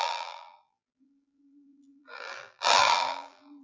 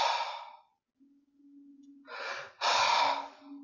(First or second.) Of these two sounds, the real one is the second